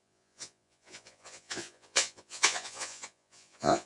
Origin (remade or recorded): remade